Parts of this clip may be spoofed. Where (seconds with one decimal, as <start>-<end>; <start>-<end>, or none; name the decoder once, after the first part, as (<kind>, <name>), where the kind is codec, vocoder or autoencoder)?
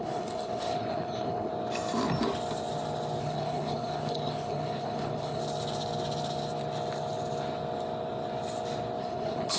0.0-1.5 (codec, HILCodec); 3.2-5.4; 9.0-9.6